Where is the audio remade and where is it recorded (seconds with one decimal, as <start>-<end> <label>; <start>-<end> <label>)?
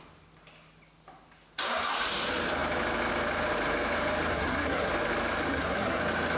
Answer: 0.0-4.3 recorded; 4.3-4.9 remade; 4.9-5.5 recorded; 5.5-6.0 remade; 6.0-6.4 recorded